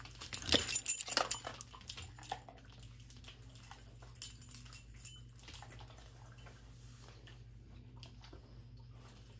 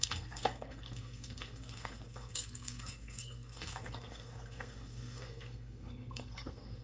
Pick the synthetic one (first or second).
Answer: second